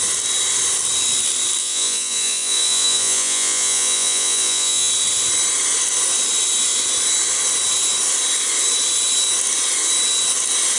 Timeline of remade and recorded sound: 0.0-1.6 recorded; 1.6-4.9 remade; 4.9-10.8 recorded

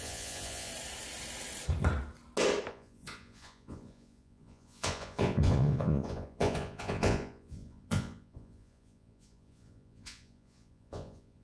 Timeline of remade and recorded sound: 0.0-0.7 remade; 0.7-2.7 recorded; 2.7-11.4 remade

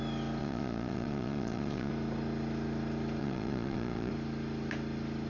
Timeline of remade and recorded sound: 0.0-0.4 recorded; 0.4-1.9 remade; 1.9-3.2 recorded; 3.2-4.1 remade; 4.1-5.3 recorded

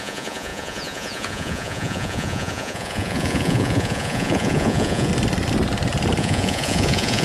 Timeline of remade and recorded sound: 0.0-5.1 remade; 5.1-6.2 recorded; 6.2-7.2 remade